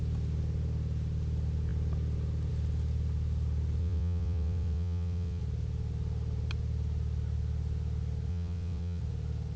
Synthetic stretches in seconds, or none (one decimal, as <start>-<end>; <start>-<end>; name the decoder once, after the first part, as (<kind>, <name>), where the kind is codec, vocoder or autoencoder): 3.8-5.4 (vocoder, WaveNeXt); 8.3-9.0